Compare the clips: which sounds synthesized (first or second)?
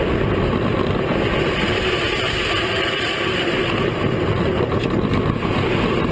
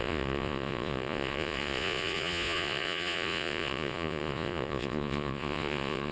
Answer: second